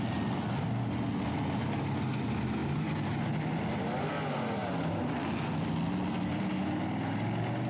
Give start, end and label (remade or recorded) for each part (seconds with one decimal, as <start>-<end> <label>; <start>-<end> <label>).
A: 0.0-7.7 recorded